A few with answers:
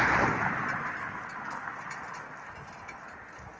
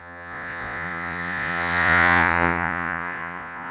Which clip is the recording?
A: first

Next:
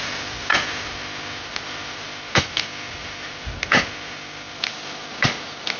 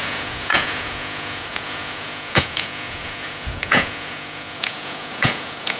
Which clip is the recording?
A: first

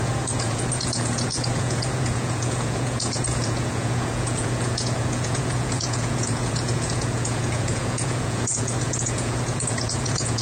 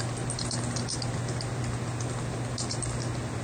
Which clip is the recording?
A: second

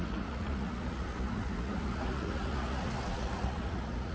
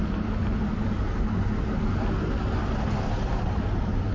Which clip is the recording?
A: second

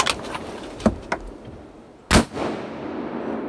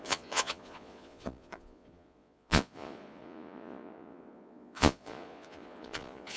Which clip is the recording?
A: first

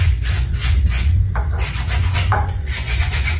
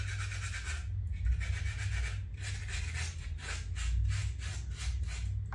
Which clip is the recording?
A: second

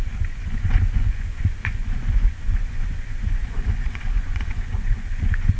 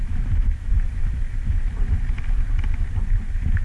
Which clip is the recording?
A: second